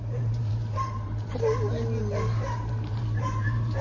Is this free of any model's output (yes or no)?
no